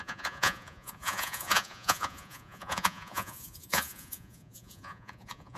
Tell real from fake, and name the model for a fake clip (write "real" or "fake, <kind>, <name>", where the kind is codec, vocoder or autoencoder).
fake, vocoder, Vocos